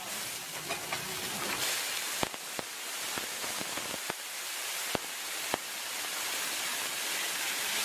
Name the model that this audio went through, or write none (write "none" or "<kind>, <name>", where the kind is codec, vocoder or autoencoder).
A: vocoder, BigVGAN v2